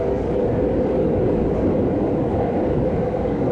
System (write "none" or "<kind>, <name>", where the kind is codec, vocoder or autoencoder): codec, DAC